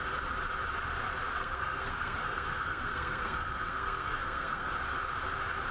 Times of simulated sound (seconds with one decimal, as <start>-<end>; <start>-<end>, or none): 1.3-4.7